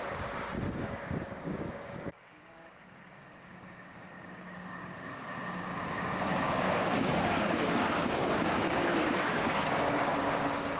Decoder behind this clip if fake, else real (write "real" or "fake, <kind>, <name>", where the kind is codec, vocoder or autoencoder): fake, codec, DAC